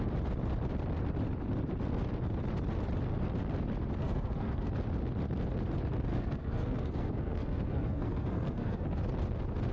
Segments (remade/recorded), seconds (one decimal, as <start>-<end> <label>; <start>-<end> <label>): 0.0-4.0 recorded; 4.0-4.7 remade; 4.7-6.1 recorded; 6.1-9.0 remade; 9.0-9.7 recorded